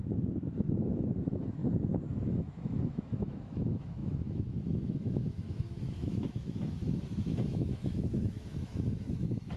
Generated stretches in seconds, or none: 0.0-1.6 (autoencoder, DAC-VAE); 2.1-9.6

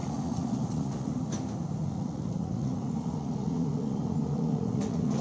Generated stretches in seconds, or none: 0.0-1.2 (vocoder, Vocos); 1.8-5.2

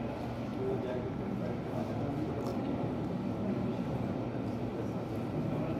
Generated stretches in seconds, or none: 0.5-1.8 (vocoder, BigVGAN v2); 2.5-4.6